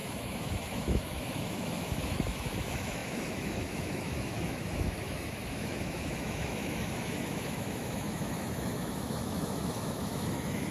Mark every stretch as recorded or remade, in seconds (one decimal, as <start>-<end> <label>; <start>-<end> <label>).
0.0-10.7 remade